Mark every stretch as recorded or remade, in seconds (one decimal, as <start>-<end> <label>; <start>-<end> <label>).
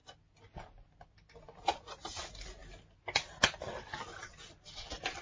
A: 0.0-5.2 recorded